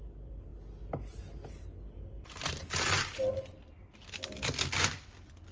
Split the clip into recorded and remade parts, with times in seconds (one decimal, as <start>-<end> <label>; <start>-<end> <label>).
0.0-5.5 recorded